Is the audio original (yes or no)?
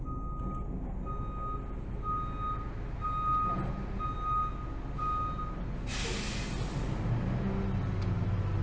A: yes